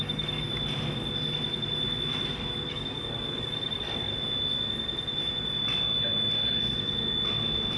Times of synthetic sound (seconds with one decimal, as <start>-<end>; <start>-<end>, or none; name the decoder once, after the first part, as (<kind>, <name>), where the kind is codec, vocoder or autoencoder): 0.0-0.5 (codec, DAC); 2.7-4.1